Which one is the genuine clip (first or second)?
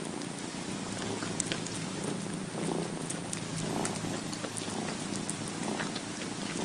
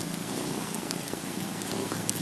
first